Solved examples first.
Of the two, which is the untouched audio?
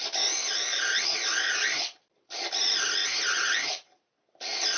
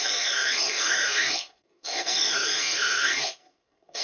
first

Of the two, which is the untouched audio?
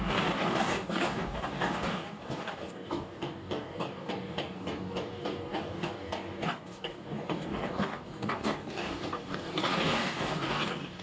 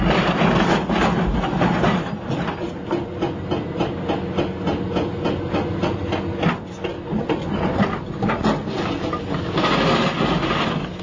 second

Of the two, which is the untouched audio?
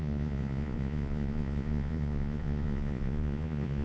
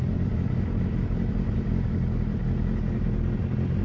second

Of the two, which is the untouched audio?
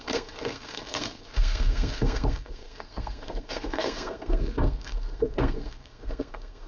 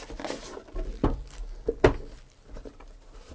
second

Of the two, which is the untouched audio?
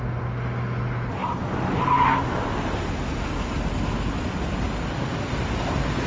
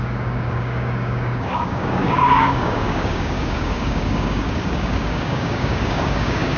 first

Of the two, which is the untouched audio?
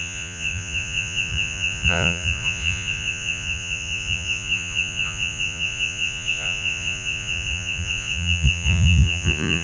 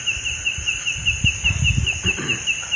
second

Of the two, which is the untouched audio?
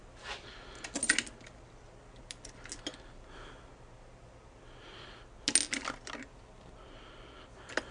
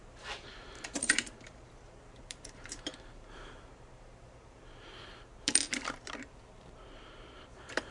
first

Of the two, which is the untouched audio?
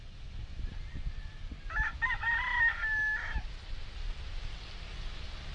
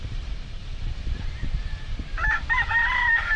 first